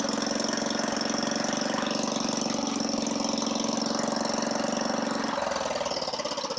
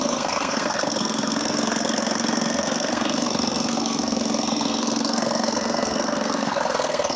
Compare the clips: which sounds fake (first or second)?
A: second